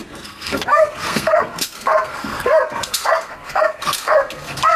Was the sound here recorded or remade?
remade